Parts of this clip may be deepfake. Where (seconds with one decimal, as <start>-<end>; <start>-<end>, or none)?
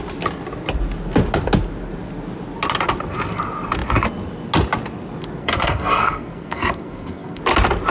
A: 5.4-7.4